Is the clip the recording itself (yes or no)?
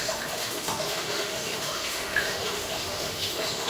no